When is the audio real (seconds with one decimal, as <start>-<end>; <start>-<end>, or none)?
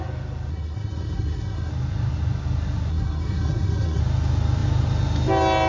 0.0-0.5; 1.7-2.9; 4.0-5.7